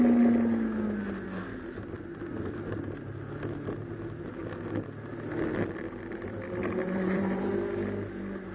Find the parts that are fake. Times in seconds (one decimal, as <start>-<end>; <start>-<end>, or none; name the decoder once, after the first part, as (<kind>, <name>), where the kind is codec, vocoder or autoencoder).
6.8-7.5 (vocoder, BigVGAN v2)